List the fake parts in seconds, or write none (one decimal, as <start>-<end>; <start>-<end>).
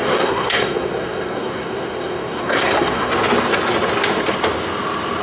0.0-3.1